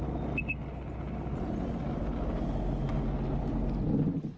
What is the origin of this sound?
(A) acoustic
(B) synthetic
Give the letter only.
A